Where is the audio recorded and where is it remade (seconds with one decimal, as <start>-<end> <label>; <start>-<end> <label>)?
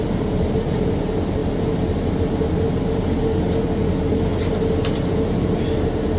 0.0-6.2 recorded